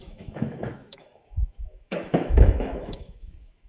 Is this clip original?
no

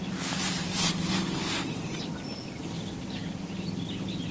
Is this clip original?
yes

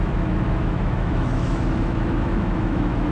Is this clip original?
no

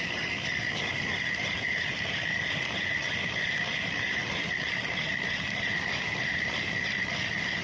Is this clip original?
yes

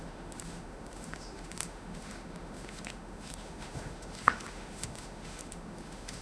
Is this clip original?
no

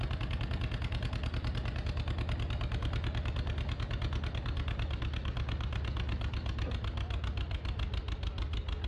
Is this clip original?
yes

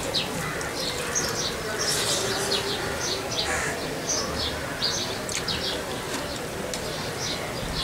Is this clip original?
yes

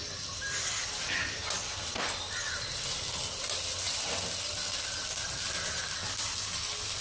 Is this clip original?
yes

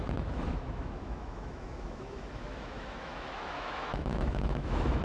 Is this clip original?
no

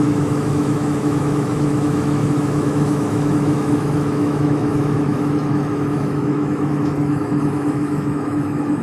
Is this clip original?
no